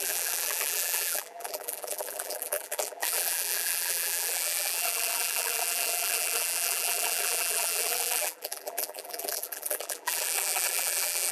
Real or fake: fake